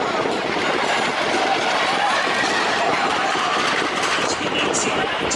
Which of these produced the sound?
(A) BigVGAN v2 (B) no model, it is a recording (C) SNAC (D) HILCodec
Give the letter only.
B